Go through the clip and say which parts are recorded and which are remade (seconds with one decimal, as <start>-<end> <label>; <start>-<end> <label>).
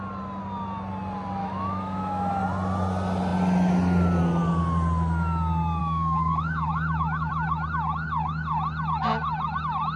0.0-1.4 recorded; 1.4-2.4 remade; 2.4-5.8 recorded; 5.8-7.3 remade; 7.3-10.0 recorded